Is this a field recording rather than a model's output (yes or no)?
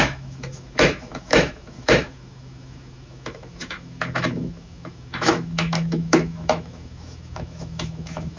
no